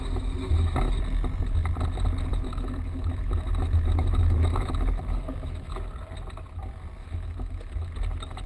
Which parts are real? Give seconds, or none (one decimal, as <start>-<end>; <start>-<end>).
0.0-2.3; 5.7-7.0; 7.9-8.5